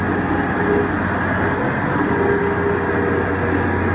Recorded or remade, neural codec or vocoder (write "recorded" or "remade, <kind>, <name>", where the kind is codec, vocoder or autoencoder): recorded